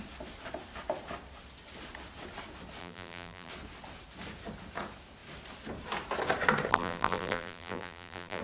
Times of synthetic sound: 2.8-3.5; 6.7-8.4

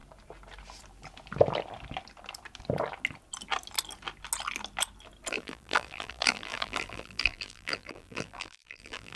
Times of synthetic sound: 5.3-9.2

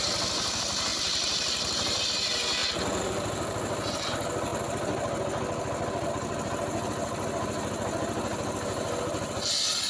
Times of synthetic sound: 0.9-2.0; 2.6-4.1; 8.3-9.0

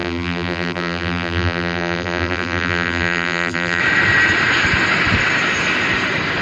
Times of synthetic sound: 0.0-3.8

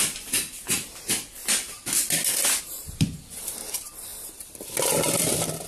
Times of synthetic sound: 0.0-1.4; 2.6-5.7

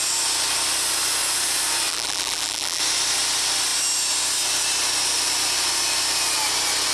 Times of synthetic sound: 1.9-2.8

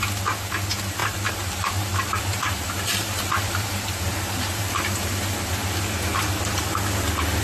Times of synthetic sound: 1.0-5.1